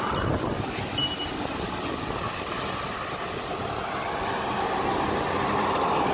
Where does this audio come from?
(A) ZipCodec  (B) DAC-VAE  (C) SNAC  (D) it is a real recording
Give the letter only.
D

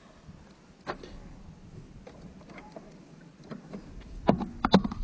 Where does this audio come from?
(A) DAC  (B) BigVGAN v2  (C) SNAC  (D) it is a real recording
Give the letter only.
D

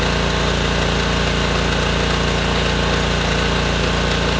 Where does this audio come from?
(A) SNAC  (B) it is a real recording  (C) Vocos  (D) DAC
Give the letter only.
B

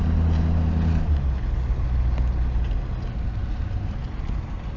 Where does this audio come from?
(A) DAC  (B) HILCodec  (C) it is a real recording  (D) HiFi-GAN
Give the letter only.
C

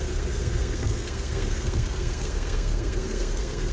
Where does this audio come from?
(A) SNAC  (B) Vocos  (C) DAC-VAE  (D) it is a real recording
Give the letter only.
A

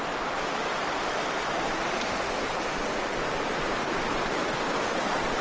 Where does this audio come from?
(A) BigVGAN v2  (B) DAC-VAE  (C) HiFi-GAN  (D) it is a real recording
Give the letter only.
D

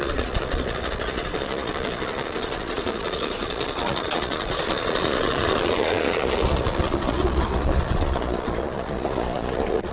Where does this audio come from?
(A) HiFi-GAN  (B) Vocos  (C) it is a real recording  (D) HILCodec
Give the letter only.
B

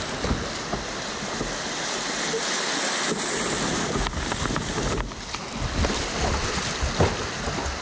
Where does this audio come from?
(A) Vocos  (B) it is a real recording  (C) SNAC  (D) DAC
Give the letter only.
B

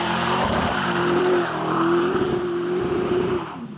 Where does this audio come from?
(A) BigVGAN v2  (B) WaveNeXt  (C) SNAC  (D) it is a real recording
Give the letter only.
A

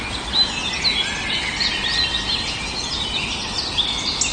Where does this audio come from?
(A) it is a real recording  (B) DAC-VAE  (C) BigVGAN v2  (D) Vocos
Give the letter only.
A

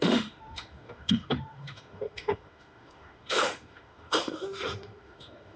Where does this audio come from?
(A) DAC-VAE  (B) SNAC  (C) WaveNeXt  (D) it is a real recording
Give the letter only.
A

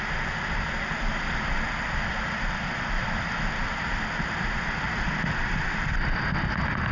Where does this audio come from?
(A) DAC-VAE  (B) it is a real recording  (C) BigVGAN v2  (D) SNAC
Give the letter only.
B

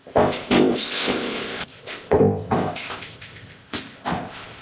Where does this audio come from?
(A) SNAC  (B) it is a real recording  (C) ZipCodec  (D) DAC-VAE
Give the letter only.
C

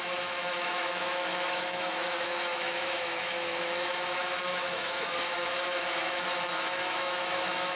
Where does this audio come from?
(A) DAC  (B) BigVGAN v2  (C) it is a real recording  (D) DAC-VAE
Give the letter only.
D